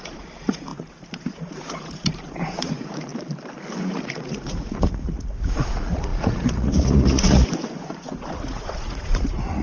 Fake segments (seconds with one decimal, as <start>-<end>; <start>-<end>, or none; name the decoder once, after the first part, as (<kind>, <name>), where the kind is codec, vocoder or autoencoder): 0.0-3.1 (vocoder, Vocos); 3.8-9.6